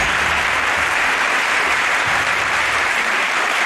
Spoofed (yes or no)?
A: yes